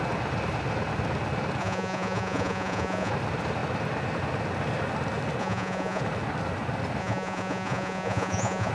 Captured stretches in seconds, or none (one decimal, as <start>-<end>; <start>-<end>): 0.0-1.6; 3.1-5.4; 6.0-7.0

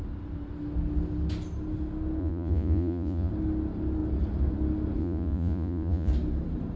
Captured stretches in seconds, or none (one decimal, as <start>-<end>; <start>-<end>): 0.0-2.2; 3.3-5.0; 6.1-6.8

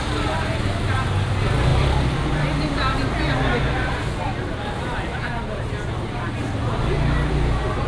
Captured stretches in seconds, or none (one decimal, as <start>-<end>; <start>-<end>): 0.0-7.9

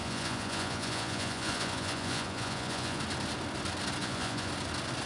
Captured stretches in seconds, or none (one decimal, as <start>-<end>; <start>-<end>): 3.0-4.0; 4.5-5.1

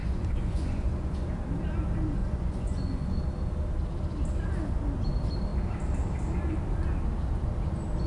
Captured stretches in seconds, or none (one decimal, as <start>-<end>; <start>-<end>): 1.3-2.2; 3.1-8.1

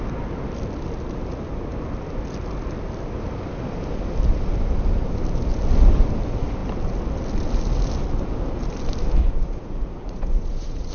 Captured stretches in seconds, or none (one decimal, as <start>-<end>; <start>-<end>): 0.0-9.2

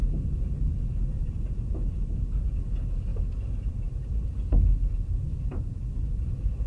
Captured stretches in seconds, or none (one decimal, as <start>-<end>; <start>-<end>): 0.0-1.1; 1.7-5.2; 5.8-6.7